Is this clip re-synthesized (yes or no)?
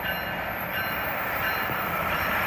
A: yes